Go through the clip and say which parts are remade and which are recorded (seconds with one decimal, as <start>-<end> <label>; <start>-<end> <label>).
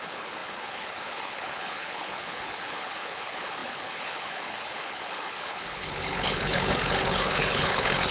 0.0-8.1 remade